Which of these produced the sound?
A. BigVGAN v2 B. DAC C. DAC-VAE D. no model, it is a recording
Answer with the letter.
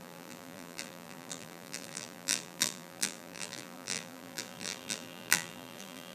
A